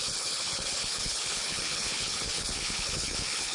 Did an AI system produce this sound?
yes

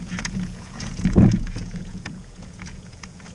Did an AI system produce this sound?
yes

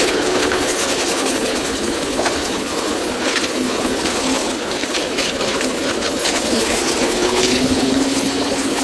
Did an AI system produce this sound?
yes